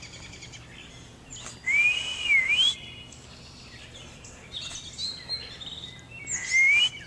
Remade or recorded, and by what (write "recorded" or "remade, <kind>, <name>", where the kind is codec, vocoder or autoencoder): recorded